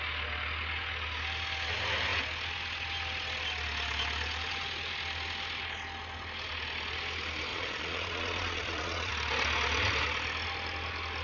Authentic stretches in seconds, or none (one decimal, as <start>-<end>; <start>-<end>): 0.0-7.5; 9.1-11.2